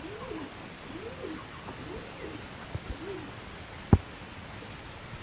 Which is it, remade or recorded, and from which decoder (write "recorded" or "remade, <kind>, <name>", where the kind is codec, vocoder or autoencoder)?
recorded